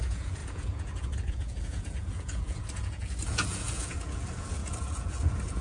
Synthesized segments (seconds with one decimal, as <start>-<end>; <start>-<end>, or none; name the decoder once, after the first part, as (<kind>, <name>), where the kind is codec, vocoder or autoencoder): 0.0-5.6 (vocoder, Vocos)